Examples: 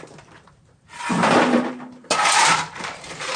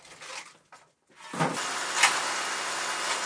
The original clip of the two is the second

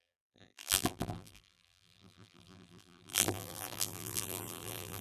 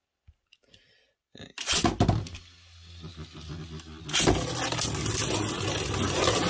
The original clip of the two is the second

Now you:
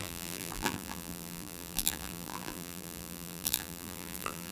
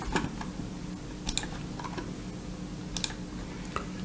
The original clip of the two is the second